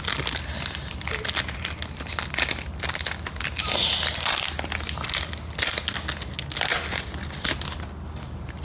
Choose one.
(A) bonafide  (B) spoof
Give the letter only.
A